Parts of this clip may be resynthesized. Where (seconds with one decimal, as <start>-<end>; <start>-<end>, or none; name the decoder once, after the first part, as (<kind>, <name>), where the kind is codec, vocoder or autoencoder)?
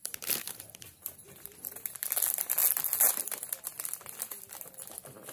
none